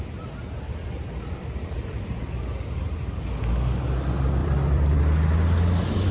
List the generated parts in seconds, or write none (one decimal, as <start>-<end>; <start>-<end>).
0.8-2.1; 4.4-5.0